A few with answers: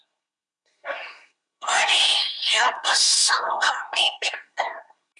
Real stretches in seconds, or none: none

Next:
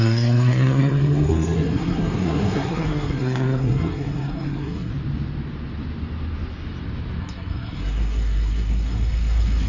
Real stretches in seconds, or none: 4.9-7.2

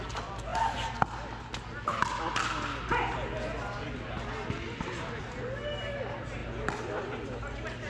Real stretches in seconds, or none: 0.0-7.9